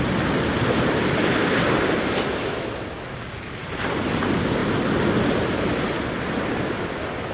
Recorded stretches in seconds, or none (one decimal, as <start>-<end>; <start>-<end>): 0.0-7.3